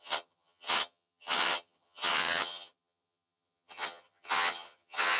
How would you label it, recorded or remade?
remade